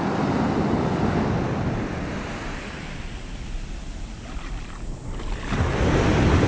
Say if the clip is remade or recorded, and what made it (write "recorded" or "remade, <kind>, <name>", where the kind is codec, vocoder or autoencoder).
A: recorded